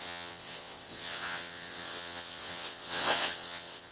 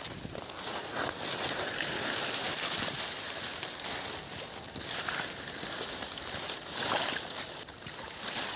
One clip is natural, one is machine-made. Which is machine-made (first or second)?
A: first